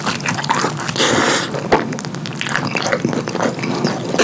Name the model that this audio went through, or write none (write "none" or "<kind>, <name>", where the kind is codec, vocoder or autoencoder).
none